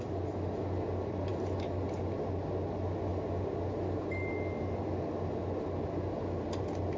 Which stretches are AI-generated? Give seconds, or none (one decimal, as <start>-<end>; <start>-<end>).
none